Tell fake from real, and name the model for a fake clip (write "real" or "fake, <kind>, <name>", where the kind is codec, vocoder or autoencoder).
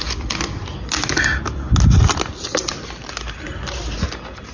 real